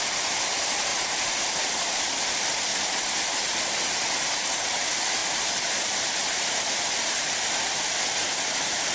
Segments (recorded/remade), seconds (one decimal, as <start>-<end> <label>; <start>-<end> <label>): 0.0-8.9 remade